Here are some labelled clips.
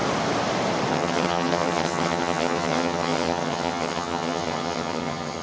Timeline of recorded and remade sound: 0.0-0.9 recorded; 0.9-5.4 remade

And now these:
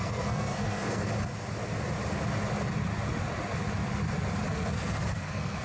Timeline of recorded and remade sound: 0.0-1.1 remade; 1.1-4.5 recorded; 4.5-5.6 remade

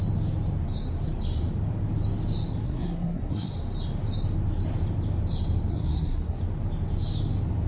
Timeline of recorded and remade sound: 0.0-2.6 recorded; 2.6-3.5 remade; 3.5-5.7 recorded; 5.7-6.4 remade; 6.4-7.7 recorded